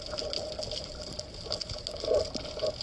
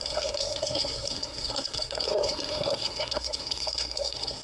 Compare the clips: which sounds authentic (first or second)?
first